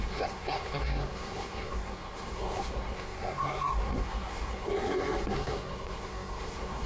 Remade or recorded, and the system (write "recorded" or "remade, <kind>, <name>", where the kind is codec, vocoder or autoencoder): remade, codec, SNAC